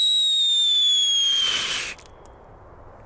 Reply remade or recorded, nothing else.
recorded